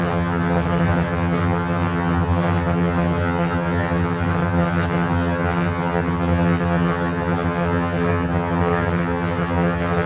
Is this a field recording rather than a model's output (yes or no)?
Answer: no